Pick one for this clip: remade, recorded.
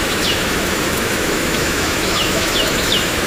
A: remade